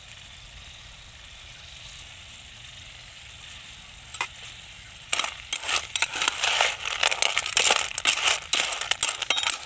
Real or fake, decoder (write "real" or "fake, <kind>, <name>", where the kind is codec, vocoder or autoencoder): real